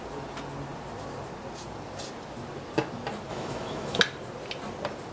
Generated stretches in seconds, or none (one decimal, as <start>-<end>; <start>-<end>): 3.3-4.0